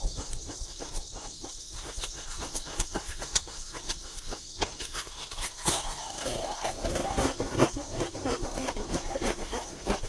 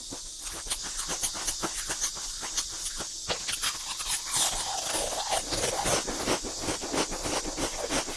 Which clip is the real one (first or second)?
second